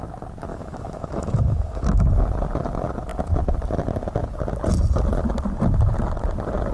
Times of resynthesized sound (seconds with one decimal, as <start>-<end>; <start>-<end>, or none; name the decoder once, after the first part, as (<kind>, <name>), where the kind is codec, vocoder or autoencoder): 0.5-2.2 (autoencoder, DAC-VAE)